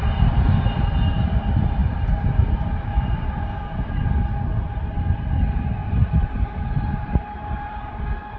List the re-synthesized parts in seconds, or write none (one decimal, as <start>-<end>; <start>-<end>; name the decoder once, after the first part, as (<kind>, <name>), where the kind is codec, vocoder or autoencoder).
5.8-8.0 (vocoder, BigVGAN v2)